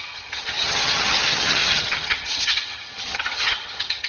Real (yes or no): no